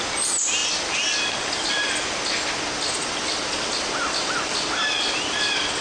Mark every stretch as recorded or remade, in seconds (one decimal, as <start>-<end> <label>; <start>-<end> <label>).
0.0-5.8 recorded